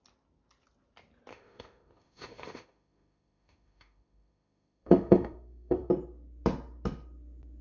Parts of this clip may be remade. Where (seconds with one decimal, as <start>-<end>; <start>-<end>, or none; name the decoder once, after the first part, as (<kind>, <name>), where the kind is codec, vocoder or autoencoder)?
1.3-5.9 (autoencoder, DAC-VAE)